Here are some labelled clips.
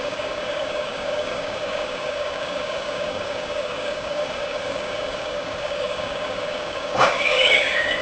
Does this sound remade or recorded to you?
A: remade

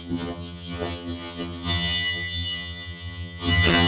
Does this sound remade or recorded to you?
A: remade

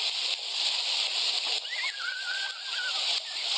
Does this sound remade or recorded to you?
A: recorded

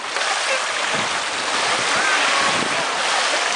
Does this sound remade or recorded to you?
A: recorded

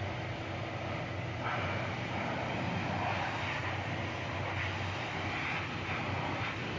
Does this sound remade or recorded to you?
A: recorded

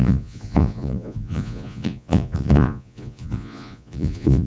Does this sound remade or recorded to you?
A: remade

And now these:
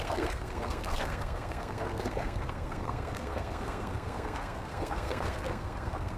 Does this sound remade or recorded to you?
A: remade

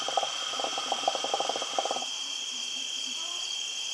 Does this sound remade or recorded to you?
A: remade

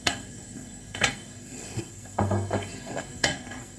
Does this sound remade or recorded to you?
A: remade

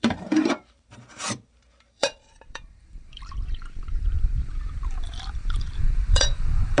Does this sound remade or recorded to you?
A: remade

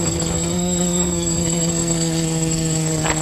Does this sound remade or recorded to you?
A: remade